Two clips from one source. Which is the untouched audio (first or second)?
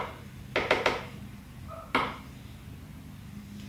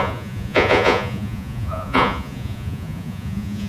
first